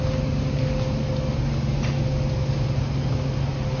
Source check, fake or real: real